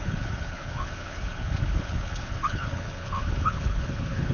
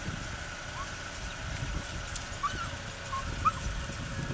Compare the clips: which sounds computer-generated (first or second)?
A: first